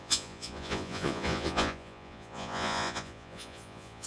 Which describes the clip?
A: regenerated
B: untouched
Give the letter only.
A